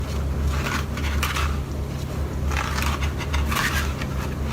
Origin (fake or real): real